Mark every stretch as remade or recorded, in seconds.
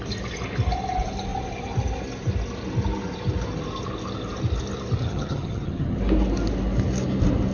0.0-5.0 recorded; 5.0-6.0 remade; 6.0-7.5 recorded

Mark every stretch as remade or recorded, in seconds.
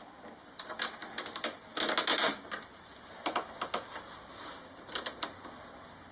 0.0-1.0 remade; 1.0-4.7 recorded; 4.7-6.1 remade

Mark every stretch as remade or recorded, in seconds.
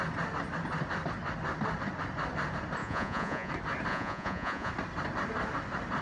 0.0-2.8 recorded; 2.8-3.5 remade; 3.5-3.9 recorded; 3.9-4.7 remade; 4.7-6.0 recorded